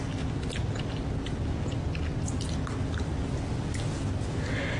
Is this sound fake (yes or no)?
no